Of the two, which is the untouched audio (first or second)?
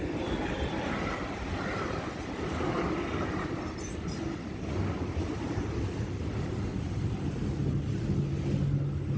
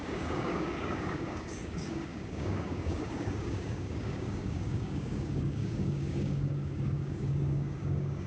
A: first